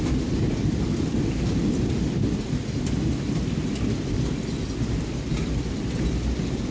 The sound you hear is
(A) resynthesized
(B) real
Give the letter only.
B